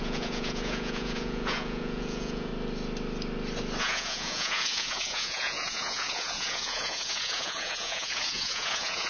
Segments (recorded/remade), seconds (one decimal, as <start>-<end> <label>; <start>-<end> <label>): 0.0-2.5 remade; 2.5-3.8 recorded; 3.8-9.1 remade